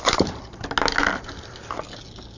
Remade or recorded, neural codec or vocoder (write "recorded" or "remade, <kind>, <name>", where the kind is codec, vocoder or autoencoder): recorded